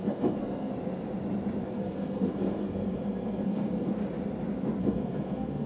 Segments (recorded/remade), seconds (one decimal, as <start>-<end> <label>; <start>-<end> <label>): 0.0-0.7 remade; 0.7-1.6 recorded; 1.6-3.9 remade; 3.9-4.8 recorded; 4.8-5.7 remade